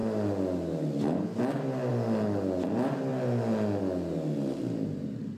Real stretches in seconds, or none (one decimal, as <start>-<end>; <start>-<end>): 0.0-5.4